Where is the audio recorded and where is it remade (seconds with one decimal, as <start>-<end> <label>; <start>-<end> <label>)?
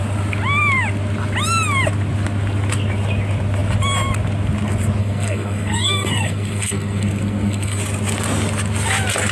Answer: 0.0-5.0 recorded; 5.0-7.8 remade; 7.8-9.3 recorded